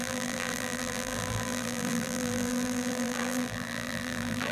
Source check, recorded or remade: remade